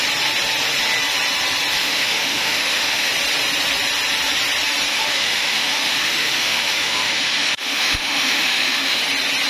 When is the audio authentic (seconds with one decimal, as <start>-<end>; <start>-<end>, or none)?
0.0-1.8; 3.1-4.9; 9.0-9.5